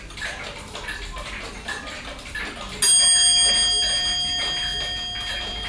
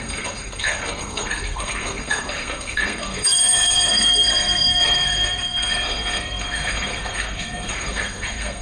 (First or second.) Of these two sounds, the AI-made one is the second